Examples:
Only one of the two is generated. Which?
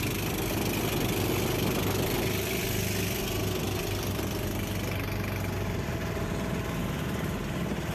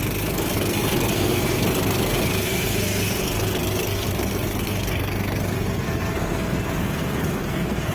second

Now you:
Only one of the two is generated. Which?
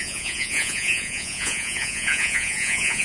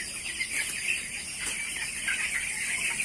first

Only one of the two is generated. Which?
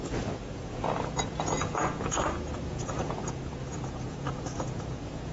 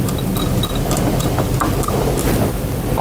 first